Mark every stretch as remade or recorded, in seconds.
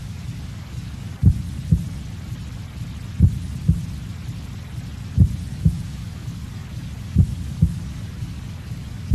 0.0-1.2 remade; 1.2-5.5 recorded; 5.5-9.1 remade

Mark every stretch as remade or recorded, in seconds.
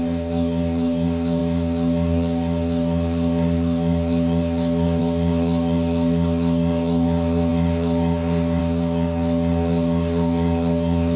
0.0-11.2 remade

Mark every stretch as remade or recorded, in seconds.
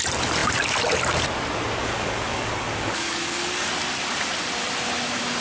0.0-1.8 recorded; 1.8-3.7 remade; 3.7-5.4 recorded